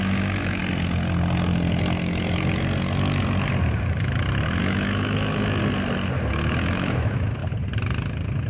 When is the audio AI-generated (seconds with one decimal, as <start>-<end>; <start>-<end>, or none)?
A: 0.0-0.6; 4.6-5.6; 6.3-7.4